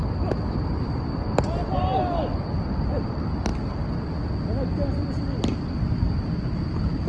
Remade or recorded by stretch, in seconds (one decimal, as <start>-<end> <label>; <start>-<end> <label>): 0.0-0.8 recorded; 0.8-1.6 remade; 1.6-2.6 recorded; 2.6-3.5 remade; 3.5-6.5 recorded; 6.5-7.1 remade